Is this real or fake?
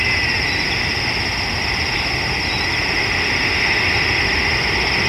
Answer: real